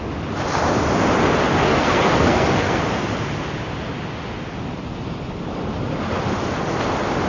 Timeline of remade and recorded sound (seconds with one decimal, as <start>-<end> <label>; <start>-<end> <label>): 0.0-1.5 recorded; 1.5-2.8 remade; 2.8-7.3 recorded